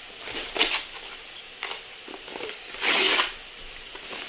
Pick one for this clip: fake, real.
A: real